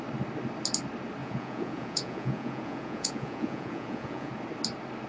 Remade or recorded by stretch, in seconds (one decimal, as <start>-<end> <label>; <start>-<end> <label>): 0.0-1.2 recorded; 1.2-4.3 remade; 4.3-5.1 recorded